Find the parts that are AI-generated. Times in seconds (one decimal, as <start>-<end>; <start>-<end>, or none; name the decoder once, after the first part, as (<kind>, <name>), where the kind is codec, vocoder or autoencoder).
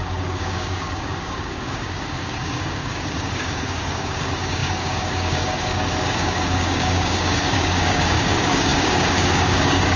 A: 0.0-10.0 (codec, DAC)